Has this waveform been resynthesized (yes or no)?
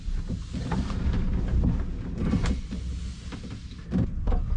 no